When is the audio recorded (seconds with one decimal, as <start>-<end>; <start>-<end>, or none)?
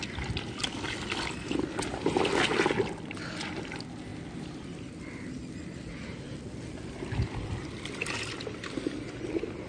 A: 0.0-9.7